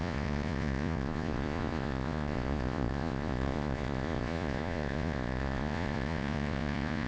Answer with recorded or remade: remade